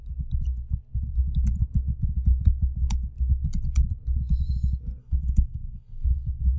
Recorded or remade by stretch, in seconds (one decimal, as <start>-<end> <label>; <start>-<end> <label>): 0.0-5.0 recorded; 5.0-6.6 remade